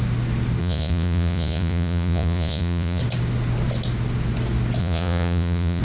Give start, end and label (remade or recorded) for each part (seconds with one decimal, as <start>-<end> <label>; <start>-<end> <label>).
0.0-0.6 recorded; 0.6-3.0 remade; 3.0-4.8 recorded; 4.8-5.8 remade